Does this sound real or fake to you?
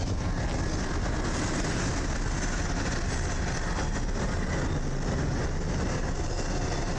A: real